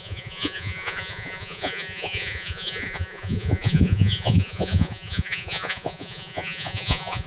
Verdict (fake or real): fake